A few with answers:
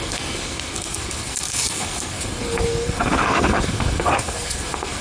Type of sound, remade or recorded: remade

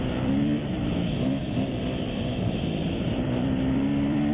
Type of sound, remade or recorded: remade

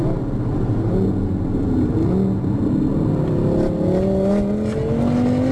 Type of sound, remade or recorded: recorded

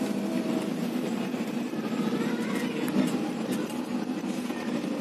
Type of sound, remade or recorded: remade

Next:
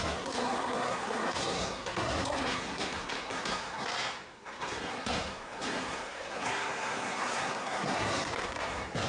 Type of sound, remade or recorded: remade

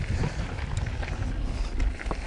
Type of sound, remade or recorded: recorded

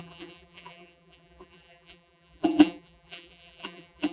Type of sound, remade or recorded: remade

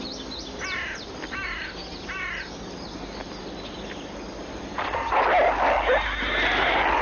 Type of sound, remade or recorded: recorded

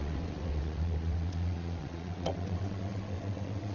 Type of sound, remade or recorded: remade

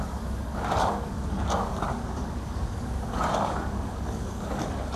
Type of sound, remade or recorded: remade